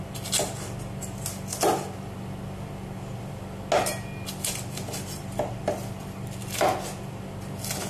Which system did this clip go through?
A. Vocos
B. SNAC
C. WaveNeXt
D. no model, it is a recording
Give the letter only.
D